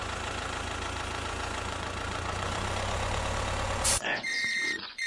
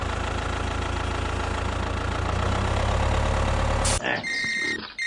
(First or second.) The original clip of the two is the second